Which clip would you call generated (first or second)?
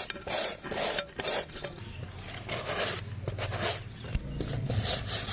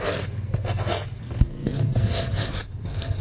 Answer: second